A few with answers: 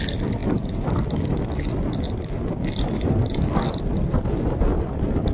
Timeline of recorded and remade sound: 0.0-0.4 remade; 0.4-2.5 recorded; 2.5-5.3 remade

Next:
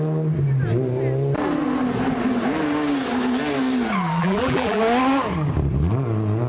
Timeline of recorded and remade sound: 0.0-4.2 recorded; 4.2-4.8 remade; 4.8-6.5 recorded

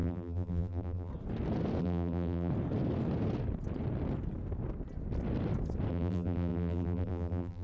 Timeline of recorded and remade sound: 0.0-1.1 remade; 1.1-1.8 recorded; 1.8-2.5 remade; 2.5-5.9 recorded; 5.9-7.6 remade

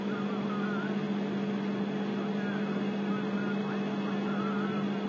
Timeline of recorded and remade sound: 0.0-5.1 recorded

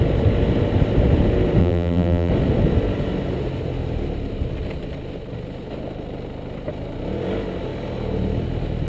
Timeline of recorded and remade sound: 0.0-1.6 recorded; 1.6-2.3 remade; 2.3-8.9 recorded